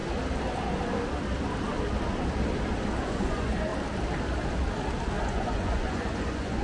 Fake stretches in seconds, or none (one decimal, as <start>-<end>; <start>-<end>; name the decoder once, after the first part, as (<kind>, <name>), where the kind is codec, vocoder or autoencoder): 3.0-3.7 (vocoder, Vocos); 5.2-6.6